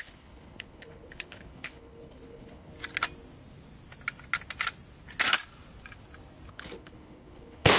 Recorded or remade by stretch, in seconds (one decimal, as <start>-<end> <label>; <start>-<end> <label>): 0.0-2.7 remade; 2.7-6.5 recorded; 6.5-7.8 remade

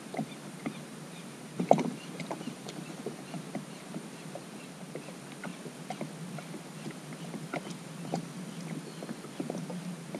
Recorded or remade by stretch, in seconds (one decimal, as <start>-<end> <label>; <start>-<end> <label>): 0.0-5.5 remade; 5.5-9.3 recorded; 9.3-10.2 remade

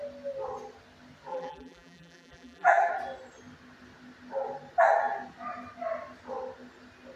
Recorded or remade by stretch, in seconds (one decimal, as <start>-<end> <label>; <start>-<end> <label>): 0.0-1.3 recorded; 1.3-2.9 remade; 2.9-7.2 recorded

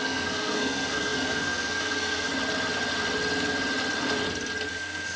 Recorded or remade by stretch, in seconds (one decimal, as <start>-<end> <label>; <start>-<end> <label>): 0.0-2.3 remade; 2.3-4.7 recorded; 4.7-5.2 remade

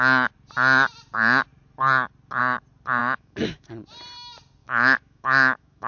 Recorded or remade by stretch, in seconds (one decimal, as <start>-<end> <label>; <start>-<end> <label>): 0.0-3.0 recorded; 3.0-3.7 remade; 3.7-4.6 recorded; 4.6-5.9 remade

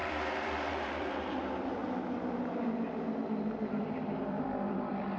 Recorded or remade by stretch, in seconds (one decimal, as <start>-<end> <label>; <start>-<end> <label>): 0.0-1.8 remade; 1.8-3.7 recorded; 3.7-5.2 remade

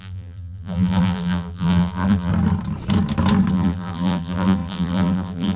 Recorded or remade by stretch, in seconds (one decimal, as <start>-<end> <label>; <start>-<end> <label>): 0.0-2.3 remade; 2.3-3.5 recorded; 3.5-5.6 remade

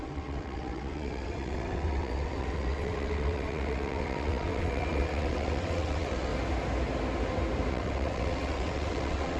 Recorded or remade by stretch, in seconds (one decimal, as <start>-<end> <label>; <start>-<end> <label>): 0.0-6.3 remade; 6.3-7.7 recorded; 7.7-9.4 remade